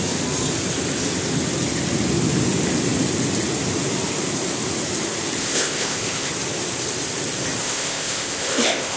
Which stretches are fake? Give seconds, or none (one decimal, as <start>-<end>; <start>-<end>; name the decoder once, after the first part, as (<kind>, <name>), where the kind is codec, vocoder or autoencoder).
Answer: 5.4-6.3 (codec, ZipCodec); 7.6-9.0